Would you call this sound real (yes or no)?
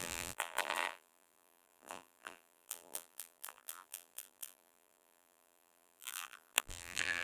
no